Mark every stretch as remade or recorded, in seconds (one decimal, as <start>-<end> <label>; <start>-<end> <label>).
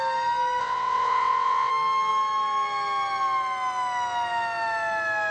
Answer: 0.0-0.6 recorded; 0.6-1.7 remade; 1.7-5.3 recorded